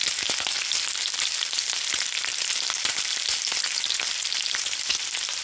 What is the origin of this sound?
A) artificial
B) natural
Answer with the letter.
A